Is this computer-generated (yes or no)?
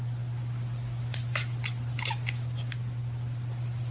no